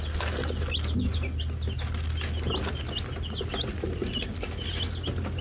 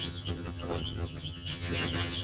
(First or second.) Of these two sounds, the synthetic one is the second